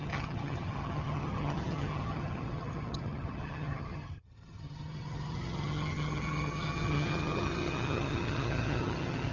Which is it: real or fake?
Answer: fake